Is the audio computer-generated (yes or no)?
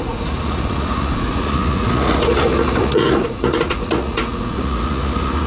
yes